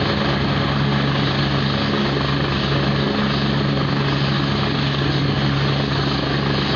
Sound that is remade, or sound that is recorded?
recorded